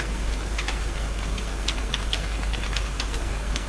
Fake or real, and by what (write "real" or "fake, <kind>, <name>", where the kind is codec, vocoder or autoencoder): fake, codec, SNAC